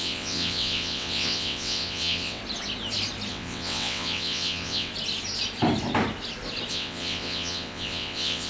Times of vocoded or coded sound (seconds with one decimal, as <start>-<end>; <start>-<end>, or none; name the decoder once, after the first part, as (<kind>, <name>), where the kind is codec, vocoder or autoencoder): 0.0-2.4 (vocoder, WaveNeXt); 3.3-4.9; 6.7-8.5